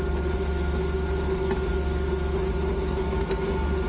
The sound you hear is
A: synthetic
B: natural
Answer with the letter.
B